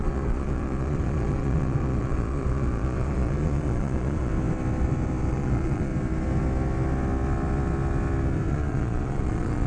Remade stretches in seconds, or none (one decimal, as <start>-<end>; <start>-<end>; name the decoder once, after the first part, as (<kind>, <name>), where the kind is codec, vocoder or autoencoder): 0.0-4.3 (vocoder, Vocos); 5.3-5.9; 8.5-9.7